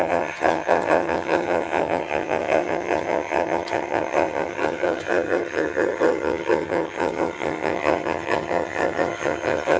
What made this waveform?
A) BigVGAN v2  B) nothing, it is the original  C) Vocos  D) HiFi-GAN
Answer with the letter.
D